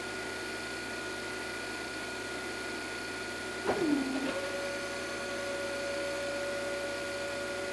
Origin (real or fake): real